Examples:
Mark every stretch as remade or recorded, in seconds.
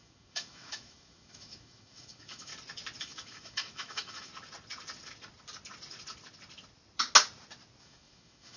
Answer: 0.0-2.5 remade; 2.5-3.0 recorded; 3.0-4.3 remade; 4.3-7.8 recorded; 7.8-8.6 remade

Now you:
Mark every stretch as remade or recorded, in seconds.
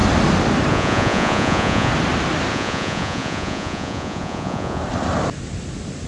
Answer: 0.0-0.7 recorded; 0.7-1.9 remade; 1.9-2.5 recorded; 2.5-4.8 remade; 4.8-6.1 recorded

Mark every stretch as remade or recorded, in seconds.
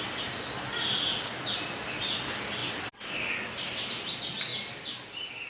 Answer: 0.0-5.5 recorded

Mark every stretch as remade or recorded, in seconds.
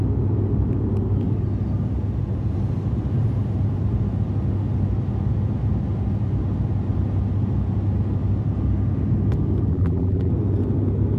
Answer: 0.0-9.7 recorded; 9.7-10.3 remade; 10.3-11.2 recorded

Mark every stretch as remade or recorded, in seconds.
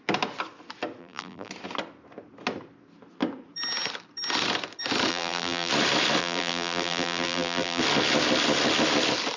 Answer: 0.0-1.0 recorded; 1.0-1.5 remade; 1.5-5.1 recorded; 5.1-5.7 remade; 5.7-6.2 recorded; 6.2-7.8 remade; 7.8-9.4 recorded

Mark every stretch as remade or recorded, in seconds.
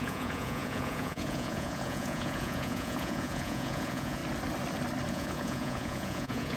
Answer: 0.0-4.2 remade; 4.2-5.1 recorded; 5.1-6.6 remade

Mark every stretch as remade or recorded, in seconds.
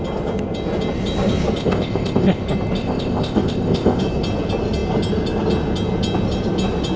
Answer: 0.0-1.6 recorded; 1.6-2.4 remade; 2.4-2.8 recorded; 2.8-4.0 remade; 4.0-7.0 recorded